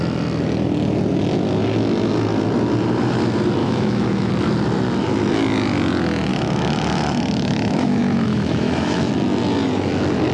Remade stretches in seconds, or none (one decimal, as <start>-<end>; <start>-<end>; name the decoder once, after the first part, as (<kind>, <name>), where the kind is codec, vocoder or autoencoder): 3.6-4.3 (autoencoder, DAC-VAE); 6.3-9.1